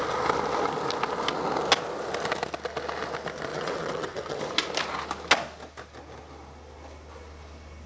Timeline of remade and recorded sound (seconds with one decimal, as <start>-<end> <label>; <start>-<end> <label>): 0.0-3.5 recorded; 3.5-4.4 remade; 4.4-7.9 recorded